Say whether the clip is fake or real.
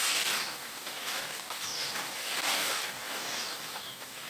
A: fake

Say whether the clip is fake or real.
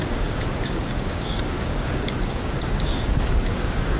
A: fake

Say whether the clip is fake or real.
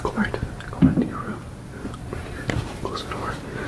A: fake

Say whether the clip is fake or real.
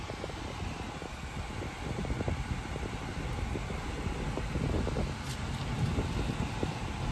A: real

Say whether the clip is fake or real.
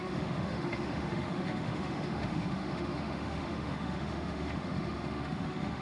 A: fake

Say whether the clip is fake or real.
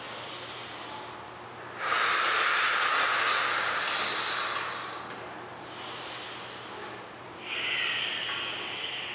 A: real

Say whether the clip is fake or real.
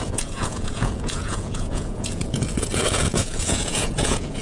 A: fake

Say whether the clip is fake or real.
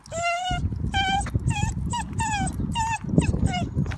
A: real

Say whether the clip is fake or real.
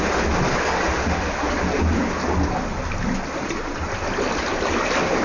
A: real